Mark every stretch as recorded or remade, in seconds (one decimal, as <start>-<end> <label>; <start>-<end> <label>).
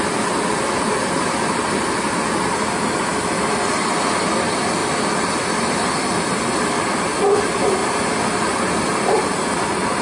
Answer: 0.0-10.0 recorded